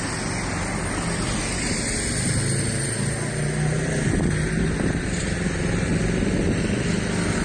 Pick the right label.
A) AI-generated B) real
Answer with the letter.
B